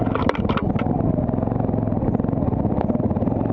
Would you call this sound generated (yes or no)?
no